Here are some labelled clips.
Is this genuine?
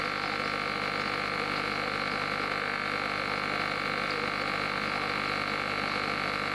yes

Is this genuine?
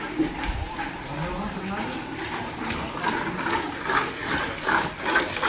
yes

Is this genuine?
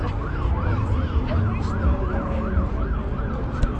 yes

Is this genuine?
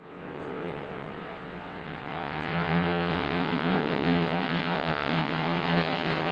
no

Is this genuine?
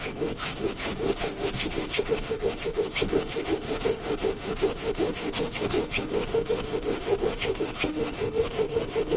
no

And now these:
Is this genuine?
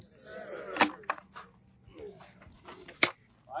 yes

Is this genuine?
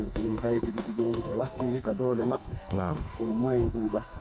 no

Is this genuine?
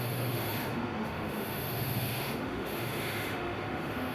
no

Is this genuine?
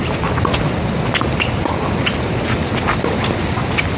yes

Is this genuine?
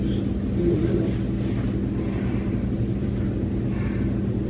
yes